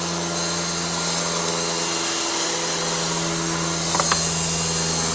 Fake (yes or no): no